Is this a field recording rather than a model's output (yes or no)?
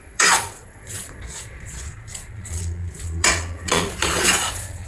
no